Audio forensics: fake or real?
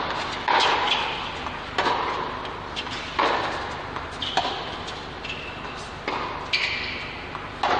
real